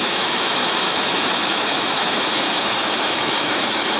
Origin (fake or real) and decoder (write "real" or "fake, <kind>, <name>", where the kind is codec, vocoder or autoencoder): fake, autoencoder, DAC-VAE